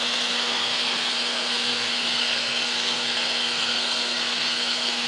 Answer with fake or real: fake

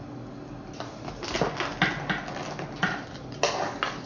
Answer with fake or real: real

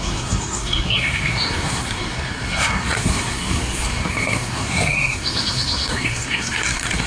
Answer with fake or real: fake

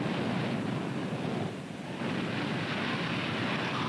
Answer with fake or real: real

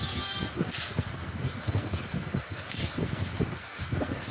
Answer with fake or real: fake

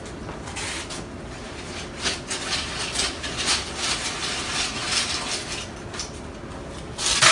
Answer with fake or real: real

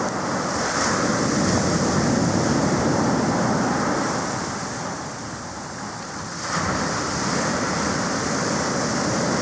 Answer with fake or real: real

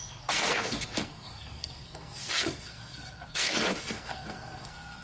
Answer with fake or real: fake